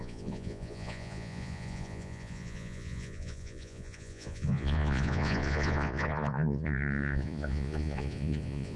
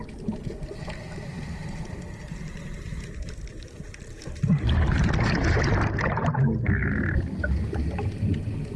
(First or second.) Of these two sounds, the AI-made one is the first